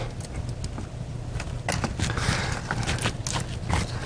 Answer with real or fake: real